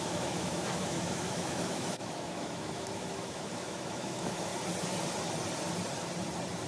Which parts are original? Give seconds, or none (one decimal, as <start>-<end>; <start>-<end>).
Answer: 4.5-6.7